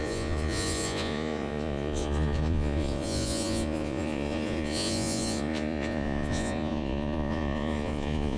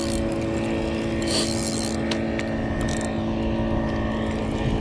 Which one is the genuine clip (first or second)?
second